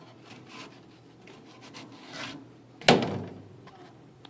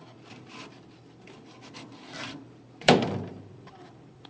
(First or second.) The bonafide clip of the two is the first